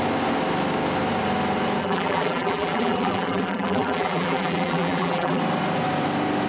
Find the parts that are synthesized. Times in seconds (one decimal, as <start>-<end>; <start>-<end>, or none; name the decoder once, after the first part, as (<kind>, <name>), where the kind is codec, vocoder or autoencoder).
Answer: 1.8-5.4 (vocoder, BigVGAN v2)